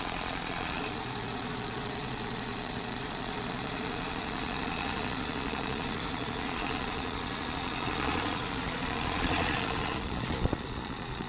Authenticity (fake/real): fake